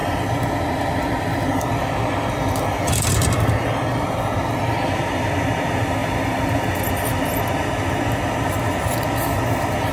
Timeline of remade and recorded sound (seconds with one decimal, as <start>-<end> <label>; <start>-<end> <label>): 0.0-9.9 recorded